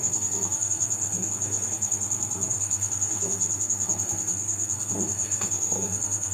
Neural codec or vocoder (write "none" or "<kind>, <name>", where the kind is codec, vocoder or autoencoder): codec, SNAC